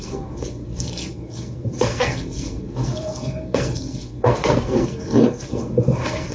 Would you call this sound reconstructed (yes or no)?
yes